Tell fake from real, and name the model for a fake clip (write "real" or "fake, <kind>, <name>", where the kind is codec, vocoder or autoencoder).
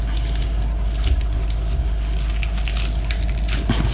real